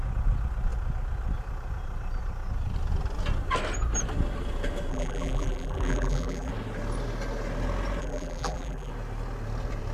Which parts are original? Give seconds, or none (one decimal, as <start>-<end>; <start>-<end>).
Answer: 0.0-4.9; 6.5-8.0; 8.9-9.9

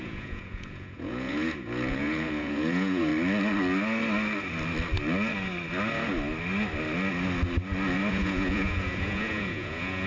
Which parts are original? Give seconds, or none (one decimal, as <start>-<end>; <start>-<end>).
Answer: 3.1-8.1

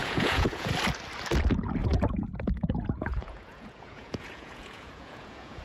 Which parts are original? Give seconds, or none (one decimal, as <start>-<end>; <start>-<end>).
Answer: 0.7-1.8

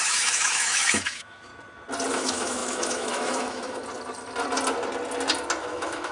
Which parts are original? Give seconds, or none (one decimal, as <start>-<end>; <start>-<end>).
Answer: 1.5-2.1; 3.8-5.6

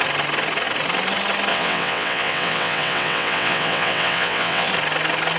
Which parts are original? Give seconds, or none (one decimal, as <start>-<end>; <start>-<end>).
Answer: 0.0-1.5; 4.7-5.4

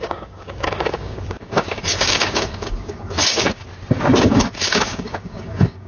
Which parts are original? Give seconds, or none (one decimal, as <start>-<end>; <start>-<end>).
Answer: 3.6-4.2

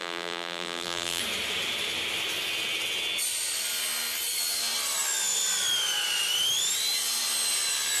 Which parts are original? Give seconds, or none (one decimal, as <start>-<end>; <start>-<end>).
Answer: 1.2-8.0